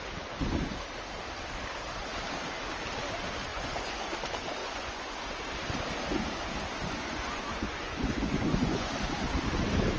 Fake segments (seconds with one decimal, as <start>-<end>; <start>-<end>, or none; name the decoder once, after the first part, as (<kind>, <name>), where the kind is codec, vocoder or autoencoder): 3.5-4.1 (vocoder, Vocos); 4.6-5.1; 6.8-8.9